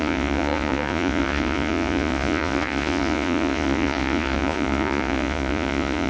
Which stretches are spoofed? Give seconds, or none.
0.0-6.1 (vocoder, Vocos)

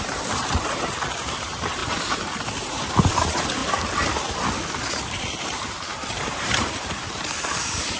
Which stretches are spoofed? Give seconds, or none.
0.0-1.8 (vocoder, BigVGAN v2); 2.6-3.6; 4.9-8.0

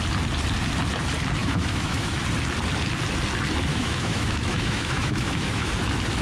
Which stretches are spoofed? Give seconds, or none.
1.4-2.2 (autoencoder, DAC-VAE); 3.7-5.7

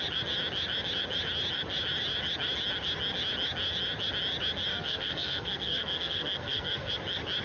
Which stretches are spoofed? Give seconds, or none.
4.7-6.9 (codec, SNAC)

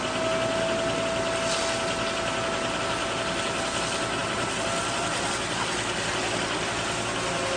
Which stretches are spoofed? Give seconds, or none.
none

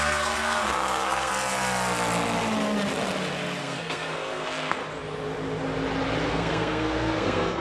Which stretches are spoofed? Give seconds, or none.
0.0-1.3 (codec, SNAC); 3.6-4.8; 6.3-7.6

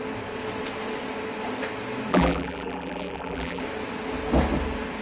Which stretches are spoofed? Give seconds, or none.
2.1-3.6 (vocoder, BigVGAN v2)